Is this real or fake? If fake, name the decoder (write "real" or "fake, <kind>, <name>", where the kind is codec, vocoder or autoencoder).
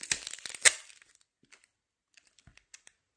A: real